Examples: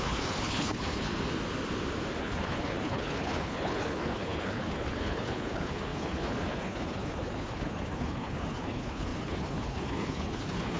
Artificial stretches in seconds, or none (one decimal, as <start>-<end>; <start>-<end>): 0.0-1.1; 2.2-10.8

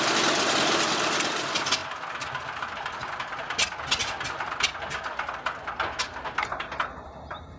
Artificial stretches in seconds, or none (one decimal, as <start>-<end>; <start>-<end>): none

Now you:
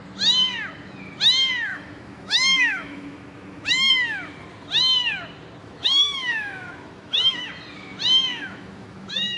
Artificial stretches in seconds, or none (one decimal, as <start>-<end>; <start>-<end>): 1.7-3.9; 5.6-7.5; 8.3-9.4